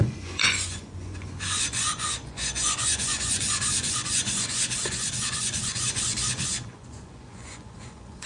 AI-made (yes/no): yes